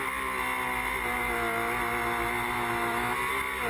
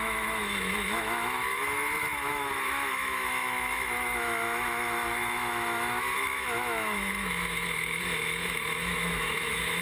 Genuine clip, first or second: first